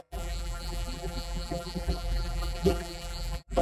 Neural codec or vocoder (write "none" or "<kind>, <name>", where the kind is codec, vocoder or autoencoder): vocoder, BigVGAN v2